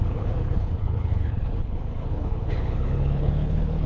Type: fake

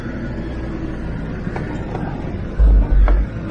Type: real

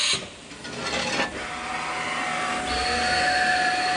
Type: real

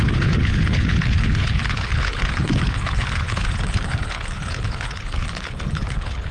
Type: fake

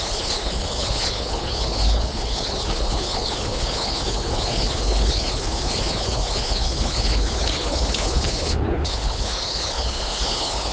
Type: fake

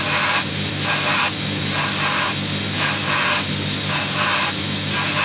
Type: real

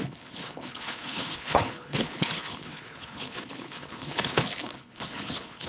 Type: fake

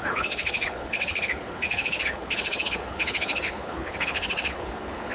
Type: fake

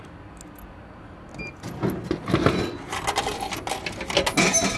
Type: real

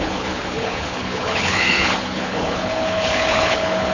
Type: fake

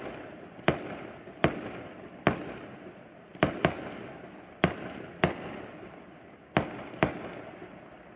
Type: real